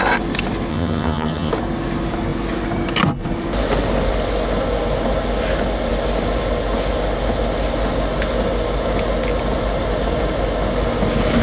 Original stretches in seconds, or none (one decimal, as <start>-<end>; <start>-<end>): 0.0-0.7; 1.5-11.4